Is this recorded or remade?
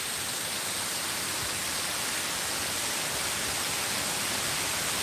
recorded